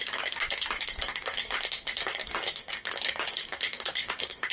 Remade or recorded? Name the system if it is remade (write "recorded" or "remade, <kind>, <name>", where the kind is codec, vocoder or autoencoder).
remade, codec, DAC